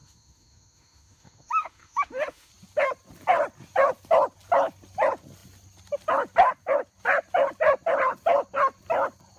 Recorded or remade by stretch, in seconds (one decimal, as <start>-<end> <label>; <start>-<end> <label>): 0.0-2.5 remade; 2.5-9.4 recorded